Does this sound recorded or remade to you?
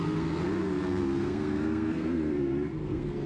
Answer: remade